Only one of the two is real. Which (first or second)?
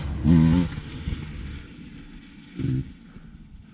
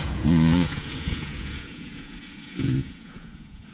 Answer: first